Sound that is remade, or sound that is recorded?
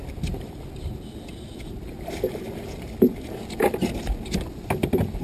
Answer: recorded